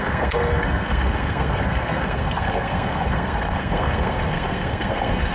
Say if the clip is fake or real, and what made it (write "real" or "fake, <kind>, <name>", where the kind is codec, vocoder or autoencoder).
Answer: fake, codec, SNAC